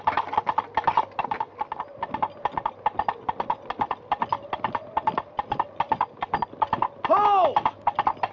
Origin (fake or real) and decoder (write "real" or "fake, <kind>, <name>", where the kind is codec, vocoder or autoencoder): real